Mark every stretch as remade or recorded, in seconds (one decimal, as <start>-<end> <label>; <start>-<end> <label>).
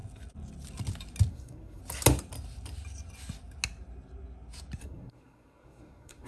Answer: 0.0-1.3 recorded; 1.3-1.8 remade; 1.8-4.8 recorded; 4.8-6.3 remade